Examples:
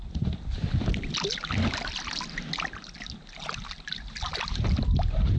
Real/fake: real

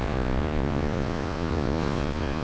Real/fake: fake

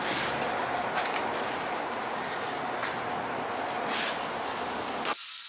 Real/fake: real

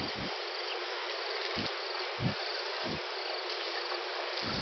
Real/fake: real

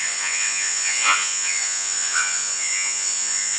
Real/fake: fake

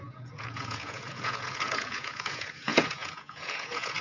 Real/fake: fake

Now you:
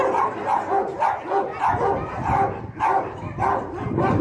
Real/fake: real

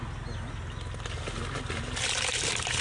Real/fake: real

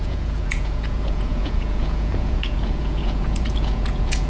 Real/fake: fake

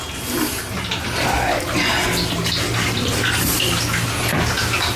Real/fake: real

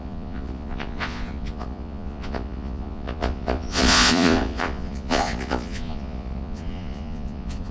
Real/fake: fake